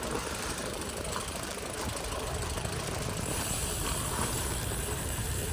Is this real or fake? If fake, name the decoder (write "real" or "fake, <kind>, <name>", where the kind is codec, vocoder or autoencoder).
fake, vocoder, BigVGAN v2